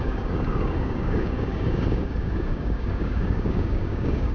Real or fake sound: fake